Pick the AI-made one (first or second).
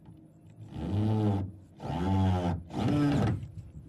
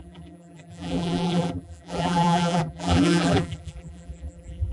second